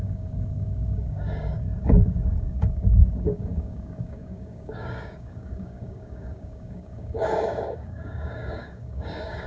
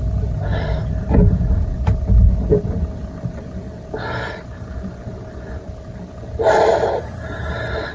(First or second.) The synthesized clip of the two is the first